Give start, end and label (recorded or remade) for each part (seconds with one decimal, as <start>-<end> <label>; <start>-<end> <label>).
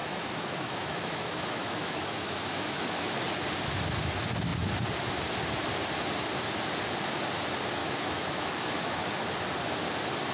0.0-3.2 remade; 3.2-7.8 recorded; 7.8-9.1 remade; 9.1-10.3 recorded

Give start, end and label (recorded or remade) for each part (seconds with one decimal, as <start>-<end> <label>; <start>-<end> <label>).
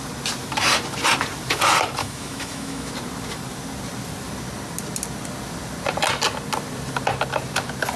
0.0-2.0 recorded; 2.0-2.9 remade; 2.9-8.0 recorded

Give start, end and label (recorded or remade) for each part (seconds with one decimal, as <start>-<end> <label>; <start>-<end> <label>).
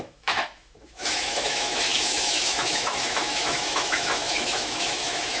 0.0-5.4 remade